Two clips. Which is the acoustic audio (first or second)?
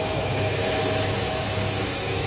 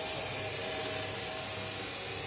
second